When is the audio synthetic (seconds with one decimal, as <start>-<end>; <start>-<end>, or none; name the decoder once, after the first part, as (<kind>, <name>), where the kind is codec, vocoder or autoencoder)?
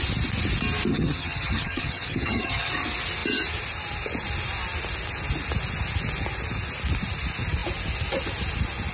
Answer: 0.9-2.7 (vocoder, HiFi-GAN)